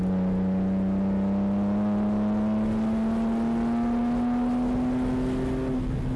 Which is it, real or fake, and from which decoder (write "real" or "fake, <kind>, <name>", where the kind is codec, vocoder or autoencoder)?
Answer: real